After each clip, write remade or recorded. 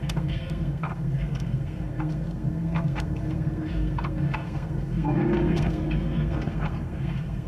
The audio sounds remade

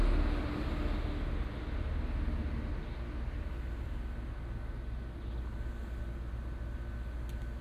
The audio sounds recorded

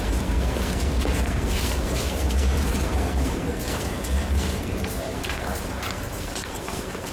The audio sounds remade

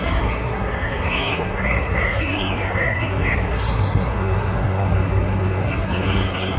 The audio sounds remade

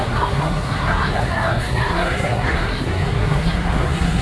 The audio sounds remade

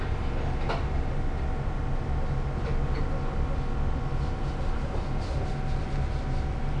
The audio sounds recorded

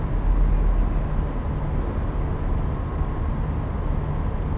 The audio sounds recorded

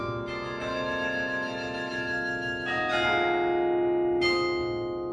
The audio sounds recorded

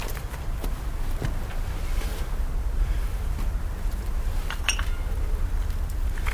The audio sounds recorded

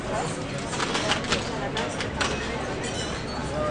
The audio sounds recorded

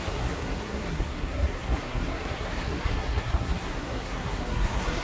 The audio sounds remade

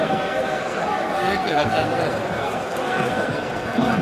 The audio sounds remade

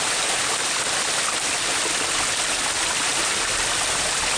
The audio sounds recorded